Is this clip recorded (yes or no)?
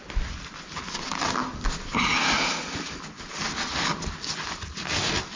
yes